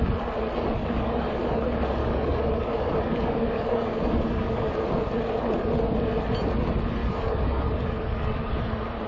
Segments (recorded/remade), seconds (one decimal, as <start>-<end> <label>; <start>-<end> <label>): 0.0-0.8 recorded; 0.8-1.6 remade; 1.6-2.0 recorded; 2.0-4.7 remade; 4.7-7.0 recorded; 7.0-8.5 remade; 8.5-9.1 recorded